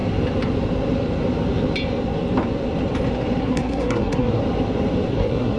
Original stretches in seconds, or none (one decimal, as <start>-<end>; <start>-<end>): 0.0-3.4; 4.4-5.1